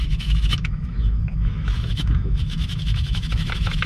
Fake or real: fake